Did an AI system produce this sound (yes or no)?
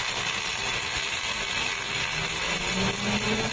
no